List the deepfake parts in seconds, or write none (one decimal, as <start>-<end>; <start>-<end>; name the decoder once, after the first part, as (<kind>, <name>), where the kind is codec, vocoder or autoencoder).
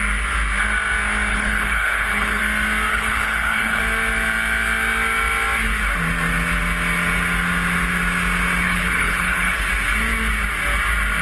1.3-2.4 (codec, HILCodec); 2.9-3.8; 8.6-9.7